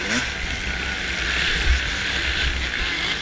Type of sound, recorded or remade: recorded